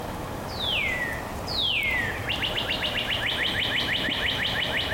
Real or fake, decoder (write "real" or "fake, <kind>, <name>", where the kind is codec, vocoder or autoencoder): real